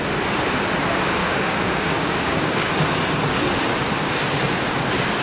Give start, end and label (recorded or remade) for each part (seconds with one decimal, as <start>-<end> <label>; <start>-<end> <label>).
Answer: 0.0-1.2 recorded; 1.2-2.7 remade; 2.7-5.2 recorded